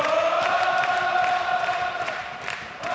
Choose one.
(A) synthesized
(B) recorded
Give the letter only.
B